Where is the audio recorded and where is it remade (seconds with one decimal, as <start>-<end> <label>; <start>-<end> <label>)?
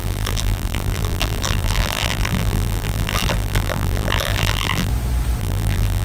0.0-4.9 remade; 4.9-5.4 recorded; 5.4-6.0 remade